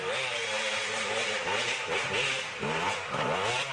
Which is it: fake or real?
real